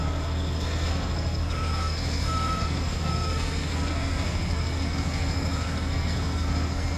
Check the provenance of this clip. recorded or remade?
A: remade